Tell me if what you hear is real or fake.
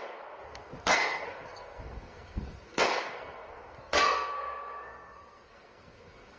fake